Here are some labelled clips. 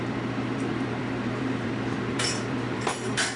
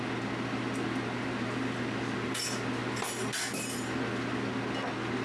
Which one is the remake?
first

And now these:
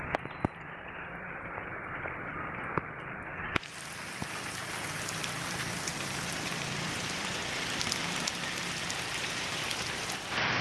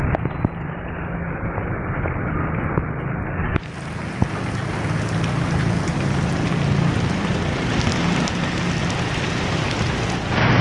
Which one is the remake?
first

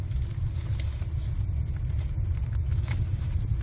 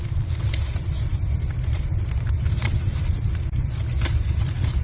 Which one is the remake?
second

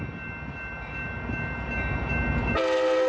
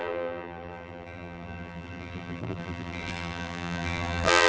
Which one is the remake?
second